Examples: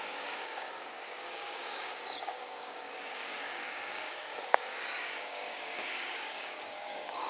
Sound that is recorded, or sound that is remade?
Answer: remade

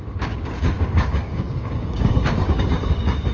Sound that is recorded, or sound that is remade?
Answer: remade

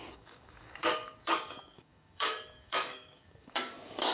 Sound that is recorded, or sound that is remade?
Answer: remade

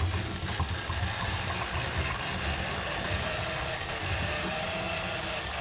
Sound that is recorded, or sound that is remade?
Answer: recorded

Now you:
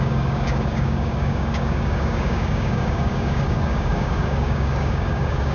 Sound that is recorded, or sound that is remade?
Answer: remade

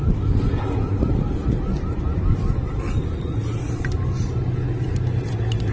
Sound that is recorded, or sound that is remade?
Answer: recorded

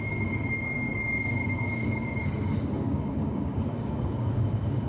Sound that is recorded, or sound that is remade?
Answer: remade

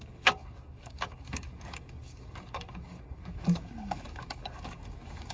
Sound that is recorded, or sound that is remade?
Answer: remade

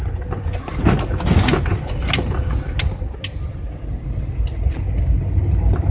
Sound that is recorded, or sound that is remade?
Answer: recorded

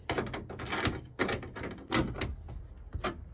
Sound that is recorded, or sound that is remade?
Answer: recorded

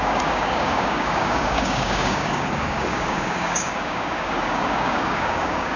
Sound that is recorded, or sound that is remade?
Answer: remade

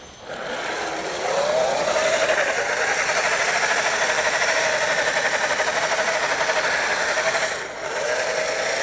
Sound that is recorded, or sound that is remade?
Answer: recorded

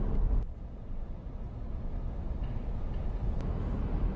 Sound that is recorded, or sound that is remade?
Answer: recorded